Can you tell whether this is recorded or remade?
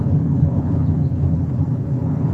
remade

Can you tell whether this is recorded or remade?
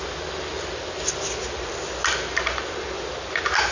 recorded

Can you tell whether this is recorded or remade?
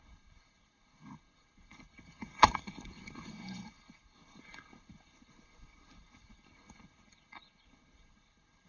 remade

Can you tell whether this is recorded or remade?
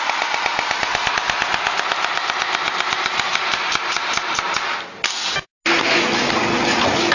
recorded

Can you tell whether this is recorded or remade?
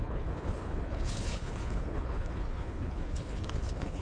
remade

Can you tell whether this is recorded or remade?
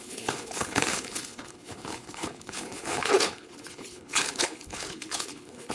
remade